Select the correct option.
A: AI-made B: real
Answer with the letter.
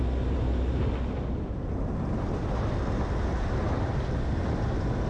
B